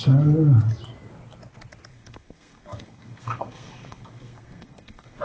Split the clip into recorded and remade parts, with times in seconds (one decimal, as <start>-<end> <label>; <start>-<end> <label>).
0.0-1.9 recorded; 1.9-5.2 remade